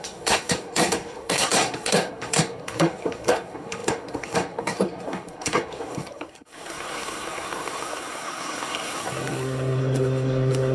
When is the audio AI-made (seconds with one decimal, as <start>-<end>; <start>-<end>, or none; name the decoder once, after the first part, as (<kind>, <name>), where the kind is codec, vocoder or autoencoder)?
0.0-10.7 (codec, SNAC)